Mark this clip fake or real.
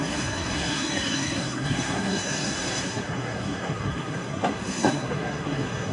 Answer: fake